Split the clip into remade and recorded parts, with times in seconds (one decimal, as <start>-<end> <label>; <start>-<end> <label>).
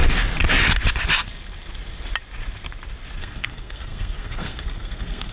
0.0-3.2 recorded; 3.2-5.3 remade